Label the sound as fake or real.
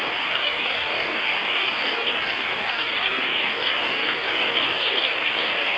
fake